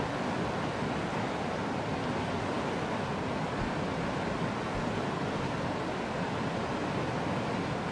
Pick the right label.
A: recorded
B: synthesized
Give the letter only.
A